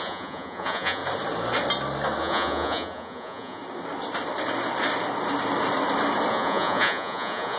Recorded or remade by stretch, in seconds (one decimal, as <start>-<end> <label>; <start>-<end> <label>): 0.0-1.0 remade; 1.0-2.2 recorded; 2.2-3.6 remade; 3.6-6.3 recorded; 6.3-7.6 remade